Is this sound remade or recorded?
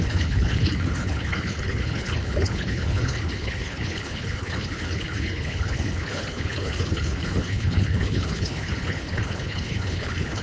remade